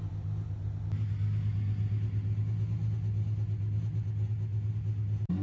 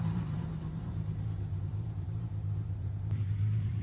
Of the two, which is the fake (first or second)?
second